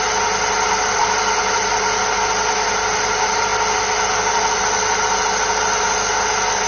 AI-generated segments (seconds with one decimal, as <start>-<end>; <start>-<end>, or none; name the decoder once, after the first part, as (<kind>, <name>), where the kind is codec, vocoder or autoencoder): none